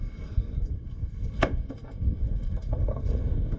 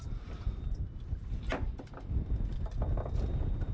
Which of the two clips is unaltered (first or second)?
second